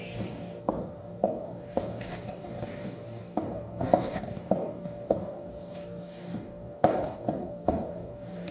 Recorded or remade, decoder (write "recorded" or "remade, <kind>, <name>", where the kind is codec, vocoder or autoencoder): remade, codec, DAC